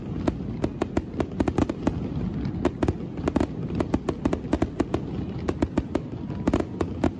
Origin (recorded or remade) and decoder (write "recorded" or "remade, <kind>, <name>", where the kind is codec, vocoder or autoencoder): recorded